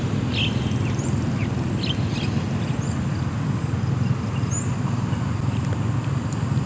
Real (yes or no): yes